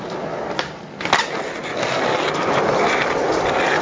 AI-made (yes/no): no